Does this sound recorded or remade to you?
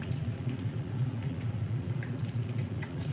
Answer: remade